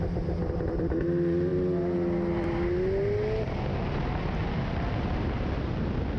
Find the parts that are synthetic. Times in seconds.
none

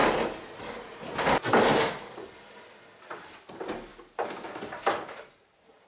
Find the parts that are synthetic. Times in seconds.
3.5-3.9; 4.8-5.9